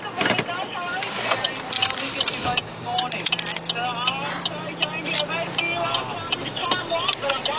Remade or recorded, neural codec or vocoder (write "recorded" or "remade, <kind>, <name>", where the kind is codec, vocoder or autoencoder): recorded